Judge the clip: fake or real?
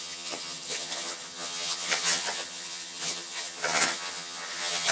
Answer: fake